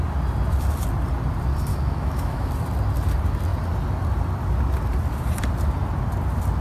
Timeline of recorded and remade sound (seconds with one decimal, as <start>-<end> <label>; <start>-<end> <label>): 0.0-1.7 recorded; 1.7-2.5 remade; 2.5-6.6 recorded